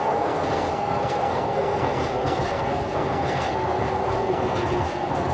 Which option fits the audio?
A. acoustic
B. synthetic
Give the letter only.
B